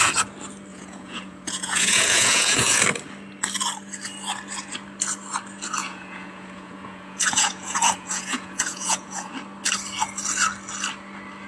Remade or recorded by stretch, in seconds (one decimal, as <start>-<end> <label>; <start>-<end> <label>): 0.0-0.7 recorded; 0.7-2.8 remade; 2.8-5.8 recorded; 5.8-9.3 remade; 9.3-11.5 recorded